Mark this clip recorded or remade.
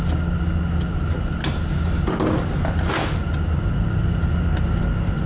recorded